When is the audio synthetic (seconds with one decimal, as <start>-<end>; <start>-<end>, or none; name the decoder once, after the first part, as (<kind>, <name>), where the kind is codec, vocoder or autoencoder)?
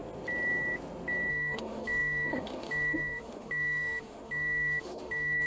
1.3-5.5 (autoencoder, DAC-VAE)